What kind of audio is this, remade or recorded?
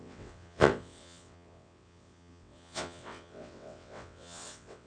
remade